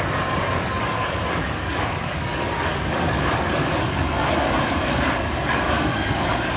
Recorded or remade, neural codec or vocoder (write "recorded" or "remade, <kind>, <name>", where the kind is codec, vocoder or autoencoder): remade, codec, DAC